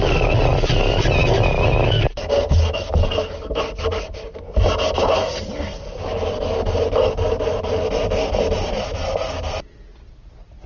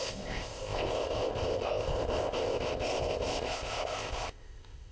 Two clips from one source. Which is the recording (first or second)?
first